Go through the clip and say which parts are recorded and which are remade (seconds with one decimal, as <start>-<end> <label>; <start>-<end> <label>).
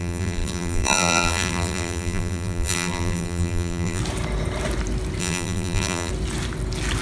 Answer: 0.0-4.0 remade; 4.0-5.2 recorded; 5.2-6.1 remade; 6.1-7.0 recorded